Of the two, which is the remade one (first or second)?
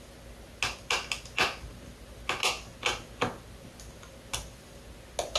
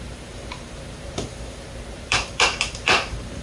second